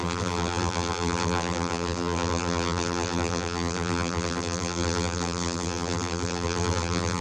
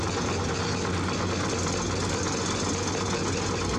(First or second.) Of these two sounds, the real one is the second